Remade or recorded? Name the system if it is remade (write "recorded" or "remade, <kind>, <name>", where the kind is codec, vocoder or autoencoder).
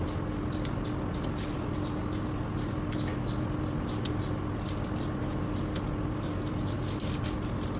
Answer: recorded